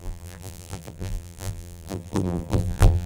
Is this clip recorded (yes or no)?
no